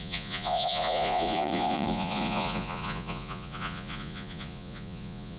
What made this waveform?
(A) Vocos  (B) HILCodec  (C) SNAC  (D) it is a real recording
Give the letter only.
A